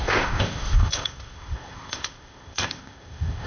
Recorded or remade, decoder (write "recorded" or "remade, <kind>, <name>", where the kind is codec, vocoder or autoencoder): remade, codec, ZipCodec